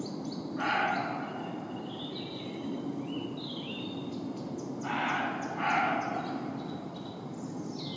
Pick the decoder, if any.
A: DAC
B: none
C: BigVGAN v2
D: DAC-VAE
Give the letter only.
B